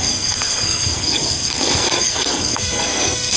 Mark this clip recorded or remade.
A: remade